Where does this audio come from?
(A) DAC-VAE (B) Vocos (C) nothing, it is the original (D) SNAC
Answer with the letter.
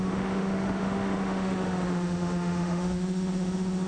A